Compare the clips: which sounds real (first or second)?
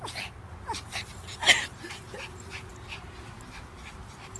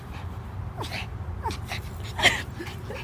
first